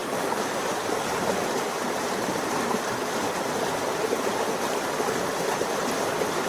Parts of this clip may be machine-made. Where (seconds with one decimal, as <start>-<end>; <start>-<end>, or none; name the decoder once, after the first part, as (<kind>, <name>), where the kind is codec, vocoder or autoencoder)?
0.0-2.4 (vocoder, BigVGAN v2); 5.3-5.9